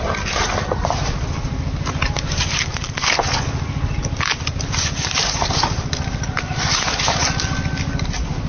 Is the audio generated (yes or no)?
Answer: no